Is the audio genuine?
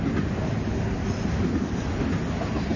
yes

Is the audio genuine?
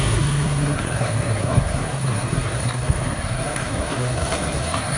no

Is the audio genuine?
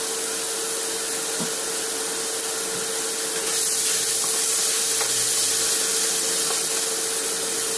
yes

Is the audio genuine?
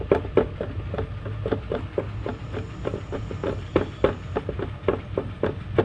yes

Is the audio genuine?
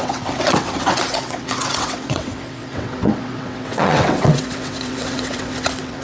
no